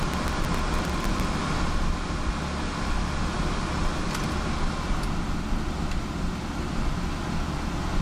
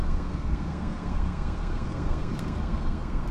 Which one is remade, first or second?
second